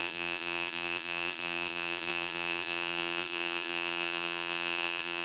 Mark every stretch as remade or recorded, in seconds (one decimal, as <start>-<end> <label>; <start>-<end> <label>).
0.0-5.2 remade